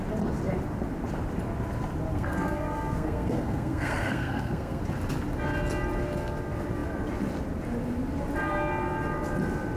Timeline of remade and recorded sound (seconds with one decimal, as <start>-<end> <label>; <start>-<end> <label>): 0.0-2.1 recorded; 2.1-4.8 remade; 4.8-9.8 recorded